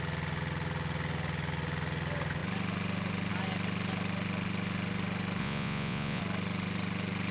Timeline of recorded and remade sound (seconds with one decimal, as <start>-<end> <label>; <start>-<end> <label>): 0.0-5.4 recorded; 5.4-6.2 remade; 6.2-7.3 recorded